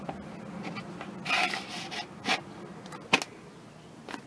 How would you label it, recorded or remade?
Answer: recorded